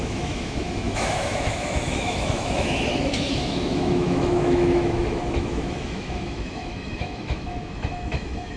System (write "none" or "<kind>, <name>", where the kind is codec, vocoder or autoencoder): autoencoder, DAC-VAE